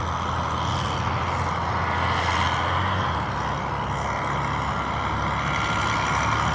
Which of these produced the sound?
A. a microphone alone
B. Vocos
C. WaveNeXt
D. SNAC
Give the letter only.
A